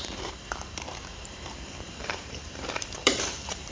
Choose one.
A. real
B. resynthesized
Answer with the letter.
B